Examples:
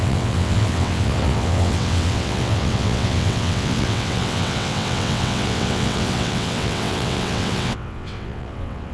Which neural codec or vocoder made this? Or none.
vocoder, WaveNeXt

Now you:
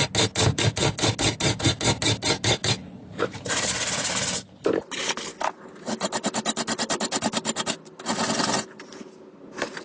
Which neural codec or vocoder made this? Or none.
none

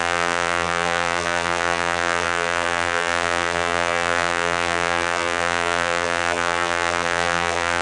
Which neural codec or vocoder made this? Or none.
vocoder, BigVGAN v2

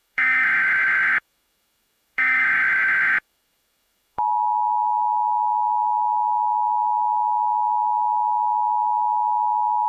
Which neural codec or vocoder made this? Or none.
autoencoder, DAC-VAE